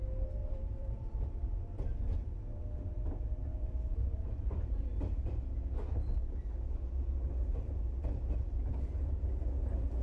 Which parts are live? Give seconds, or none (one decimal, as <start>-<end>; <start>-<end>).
0.0-0.4; 3.0-3.4; 5.1-6.2; 9.2-10.0